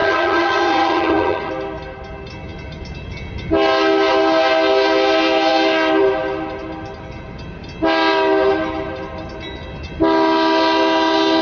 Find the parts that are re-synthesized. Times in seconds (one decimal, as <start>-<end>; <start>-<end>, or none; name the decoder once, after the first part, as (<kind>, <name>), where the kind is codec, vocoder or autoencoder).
0.0-1.5 (vocoder, HiFi-GAN)